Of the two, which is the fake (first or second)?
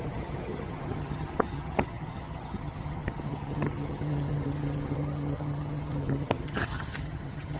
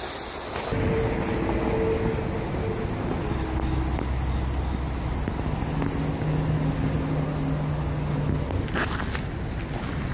first